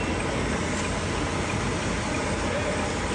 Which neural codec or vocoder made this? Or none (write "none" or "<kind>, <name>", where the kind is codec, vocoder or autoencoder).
none